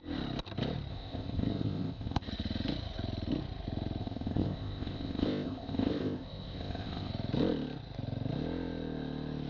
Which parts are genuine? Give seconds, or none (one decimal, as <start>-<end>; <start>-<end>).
0.0-0.9; 2.3-4.0; 7.1-9.5